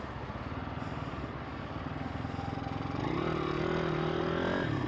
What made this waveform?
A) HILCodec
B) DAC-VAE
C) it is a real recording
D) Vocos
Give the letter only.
C